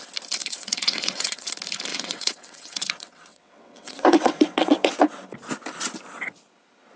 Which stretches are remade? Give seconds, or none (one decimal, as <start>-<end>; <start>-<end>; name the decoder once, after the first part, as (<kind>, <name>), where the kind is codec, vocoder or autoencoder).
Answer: 0.4-1.5 (vocoder, WaveNeXt); 1.9-5.0